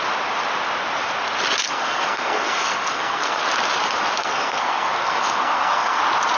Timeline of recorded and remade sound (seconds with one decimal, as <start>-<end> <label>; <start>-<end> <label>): 0.0-1.6 recorded; 1.6-3.4 remade; 3.4-4.2 recorded; 4.2-6.0 remade; 6.0-6.4 recorded